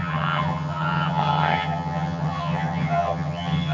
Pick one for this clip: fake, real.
fake